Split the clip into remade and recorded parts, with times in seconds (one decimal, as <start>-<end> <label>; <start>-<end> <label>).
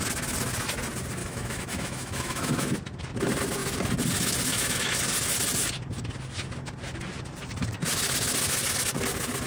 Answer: 0.0-1.2 recorded; 1.2-2.7 remade; 2.7-4.5 recorded; 4.5-5.0 remade; 5.0-9.5 recorded